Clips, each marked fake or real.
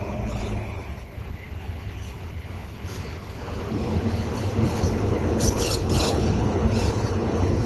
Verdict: fake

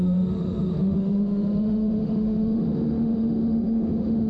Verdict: fake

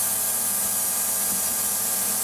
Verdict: real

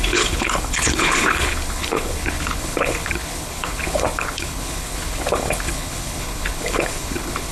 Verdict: fake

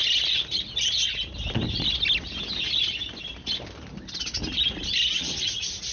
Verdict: real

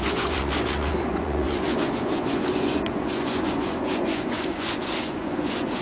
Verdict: fake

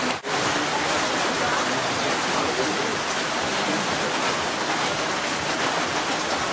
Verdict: real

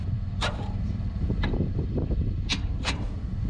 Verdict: fake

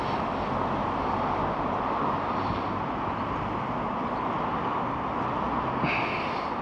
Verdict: real